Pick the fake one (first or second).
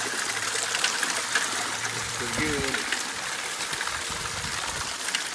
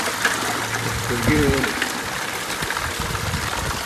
second